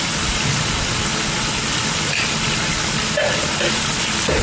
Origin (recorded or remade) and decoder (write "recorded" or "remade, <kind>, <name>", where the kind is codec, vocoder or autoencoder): recorded